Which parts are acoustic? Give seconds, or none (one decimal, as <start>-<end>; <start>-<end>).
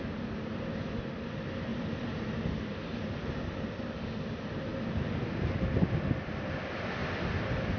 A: 0.0-1.7; 3.0-7.0